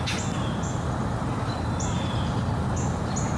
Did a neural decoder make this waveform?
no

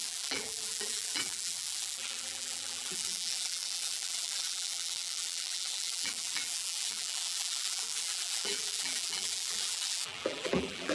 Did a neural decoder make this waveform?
yes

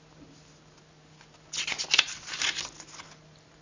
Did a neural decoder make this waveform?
no